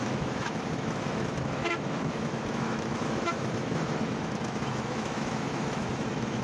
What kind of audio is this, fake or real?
fake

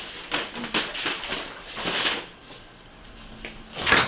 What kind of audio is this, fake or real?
real